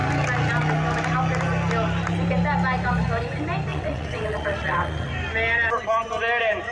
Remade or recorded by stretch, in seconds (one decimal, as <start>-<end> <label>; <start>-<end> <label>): 0.0-3.7 recorded; 3.7-5.1 remade; 5.1-6.7 recorded